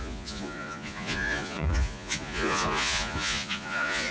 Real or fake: fake